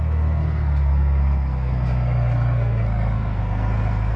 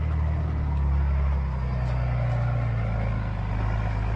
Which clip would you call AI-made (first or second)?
first